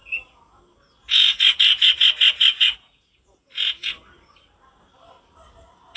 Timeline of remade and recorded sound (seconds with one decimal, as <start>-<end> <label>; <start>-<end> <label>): 0.0-0.6 remade; 0.6-1.0 recorded; 1.0-1.9 remade; 1.9-2.5 recorded; 2.5-3.9 remade; 3.9-6.0 recorded